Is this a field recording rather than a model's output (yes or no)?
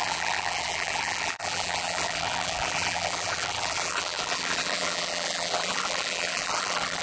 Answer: no